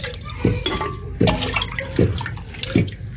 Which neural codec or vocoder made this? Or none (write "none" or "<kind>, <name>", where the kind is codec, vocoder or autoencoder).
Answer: none